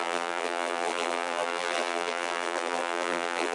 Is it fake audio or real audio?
fake